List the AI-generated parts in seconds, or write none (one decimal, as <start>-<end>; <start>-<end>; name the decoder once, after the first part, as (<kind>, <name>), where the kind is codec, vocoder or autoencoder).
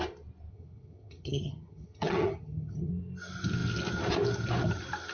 0.5-2.9 (vocoder, HiFi-GAN)